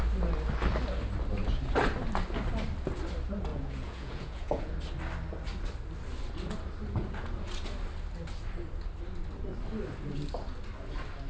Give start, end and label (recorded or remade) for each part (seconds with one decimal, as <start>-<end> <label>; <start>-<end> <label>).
0.0-3.5 recorded; 3.5-4.7 remade; 4.7-11.3 recorded